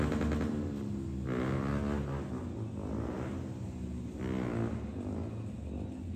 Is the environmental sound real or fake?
real